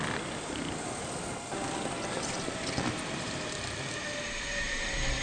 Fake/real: real